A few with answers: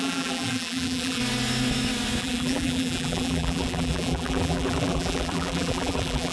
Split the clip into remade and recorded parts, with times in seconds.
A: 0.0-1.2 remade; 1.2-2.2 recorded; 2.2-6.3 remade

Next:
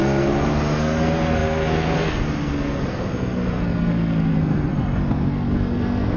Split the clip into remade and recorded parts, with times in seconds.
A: 0.0-6.2 remade

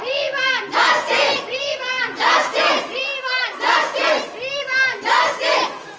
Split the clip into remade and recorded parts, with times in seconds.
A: 0.0-3.1 remade; 3.1-3.6 recorded; 3.6-4.0 remade; 4.0-5.5 recorded; 5.5-6.0 remade

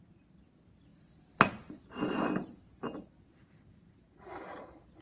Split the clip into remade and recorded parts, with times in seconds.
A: 0.0-5.0 recorded

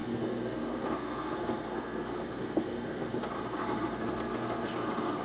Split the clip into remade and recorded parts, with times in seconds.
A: 0.0-3.1 remade; 3.1-3.6 recorded; 3.6-5.2 remade